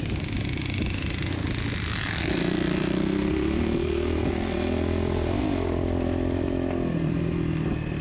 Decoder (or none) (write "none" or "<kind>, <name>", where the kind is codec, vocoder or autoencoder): none